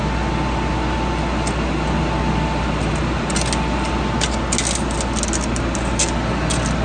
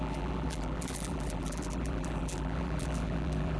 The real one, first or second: first